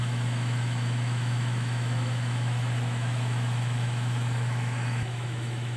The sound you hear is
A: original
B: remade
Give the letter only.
B